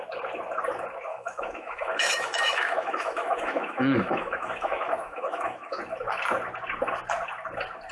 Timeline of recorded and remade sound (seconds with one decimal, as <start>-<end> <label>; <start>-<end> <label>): 0.0-1.1 recorded; 1.1-5.8 remade; 5.8-7.9 recorded